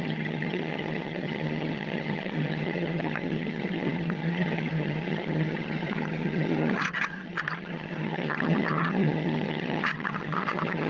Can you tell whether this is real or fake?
fake